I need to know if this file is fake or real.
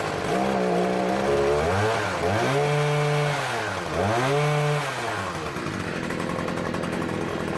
real